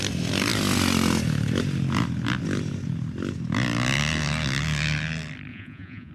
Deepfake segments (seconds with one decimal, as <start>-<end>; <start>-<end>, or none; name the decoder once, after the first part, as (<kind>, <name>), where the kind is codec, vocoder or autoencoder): 5.5-6.1 (vocoder, Vocos)